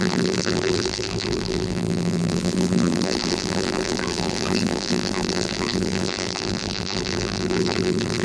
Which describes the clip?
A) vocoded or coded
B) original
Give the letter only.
A